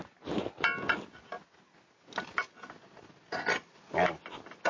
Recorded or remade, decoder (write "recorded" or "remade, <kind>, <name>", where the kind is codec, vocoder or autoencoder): recorded